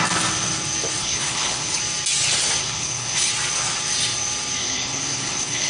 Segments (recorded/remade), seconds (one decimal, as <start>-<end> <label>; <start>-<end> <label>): 0.0-1.0 recorded; 1.0-1.8 remade; 1.8-2.6 recorded; 2.6-3.3 remade; 3.3-4.6 recorded; 4.6-5.7 remade